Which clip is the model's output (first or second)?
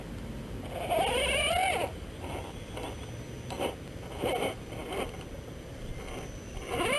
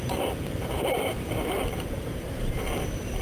second